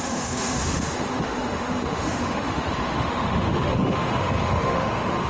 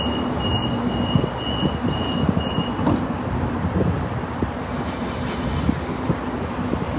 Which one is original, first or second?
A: second